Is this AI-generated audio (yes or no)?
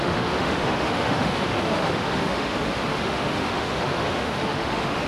yes